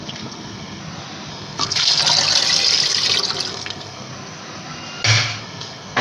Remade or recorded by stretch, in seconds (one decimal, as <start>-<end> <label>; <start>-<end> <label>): 0.0-0.8 remade; 0.8-1.3 recorded; 1.3-2.0 remade; 2.0-3.5 recorded; 3.5-4.1 remade; 4.1-5.4 recorded; 5.4-6.0 remade